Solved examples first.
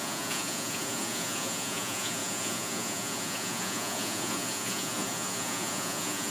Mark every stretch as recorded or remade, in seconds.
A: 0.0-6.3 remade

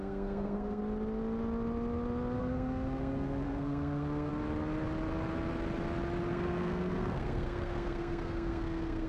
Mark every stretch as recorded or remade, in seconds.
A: 0.0-0.8 remade; 0.8-2.4 recorded; 2.4-4.3 remade; 4.3-6.3 recorded; 6.3-9.1 remade

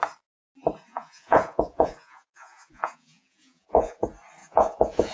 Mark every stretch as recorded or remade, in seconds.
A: 0.0-0.9 recorded; 0.9-4.0 remade; 4.0-4.4 recorded; 4.4-5.1 remade

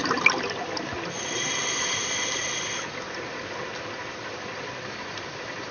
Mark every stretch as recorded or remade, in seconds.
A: 0.0-5.7 recorded

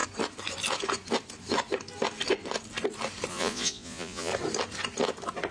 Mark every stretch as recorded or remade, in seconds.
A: 0.0-3.3 recorded; 3.3-4.3 remade; 4.3-5.5 recorded